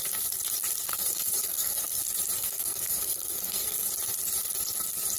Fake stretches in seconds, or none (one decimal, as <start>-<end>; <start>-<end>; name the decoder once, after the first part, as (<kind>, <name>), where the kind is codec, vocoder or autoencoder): 0.9-2.0 (codec, SNAC); 2.4-3.9